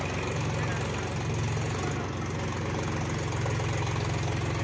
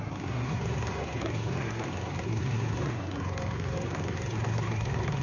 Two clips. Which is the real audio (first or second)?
first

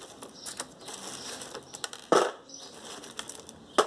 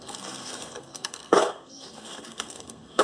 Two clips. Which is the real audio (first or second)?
first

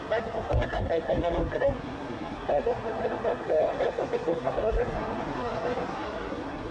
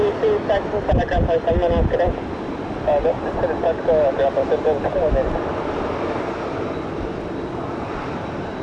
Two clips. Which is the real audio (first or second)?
second